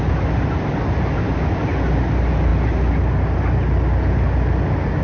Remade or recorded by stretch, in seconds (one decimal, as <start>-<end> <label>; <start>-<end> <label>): 0.0-5.0 recorded